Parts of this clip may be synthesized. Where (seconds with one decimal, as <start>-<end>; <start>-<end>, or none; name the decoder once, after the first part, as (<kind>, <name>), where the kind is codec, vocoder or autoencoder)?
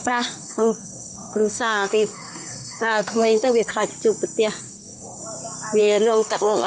0.0-3.9 (codec, SNAC); 4.6-5.2; 5.8-6.7